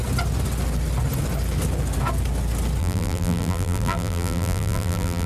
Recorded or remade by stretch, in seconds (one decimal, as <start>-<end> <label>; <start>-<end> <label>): 0.0-2.8 recorded; 2.8-5.3 remade